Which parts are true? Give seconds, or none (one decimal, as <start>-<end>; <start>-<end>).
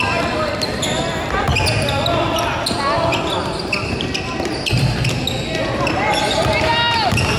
0.0-7.4